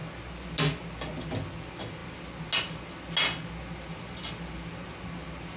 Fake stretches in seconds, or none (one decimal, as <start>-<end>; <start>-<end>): none